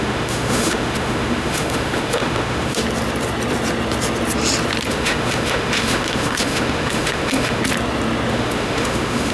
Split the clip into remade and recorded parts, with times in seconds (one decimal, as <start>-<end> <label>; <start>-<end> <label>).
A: 0.0-2.8 remade; 2.8-4.9 recorded; 4.9-7.6 remade; 7.6-8.3 recorded; 8.3-9.3 remade